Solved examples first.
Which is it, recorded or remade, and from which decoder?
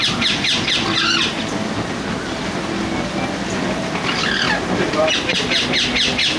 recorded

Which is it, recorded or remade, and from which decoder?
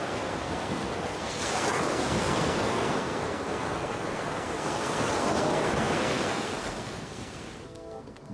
remade, codec, SNAC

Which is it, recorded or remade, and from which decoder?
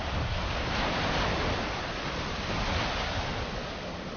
recorded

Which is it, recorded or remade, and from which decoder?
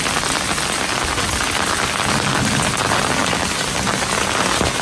recorded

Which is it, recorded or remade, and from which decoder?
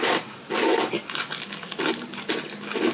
recorded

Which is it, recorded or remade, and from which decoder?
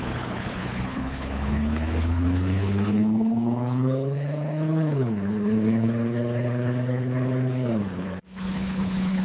remade, codec, HILCodec